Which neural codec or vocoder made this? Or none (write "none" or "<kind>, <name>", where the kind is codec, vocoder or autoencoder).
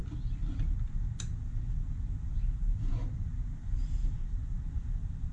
none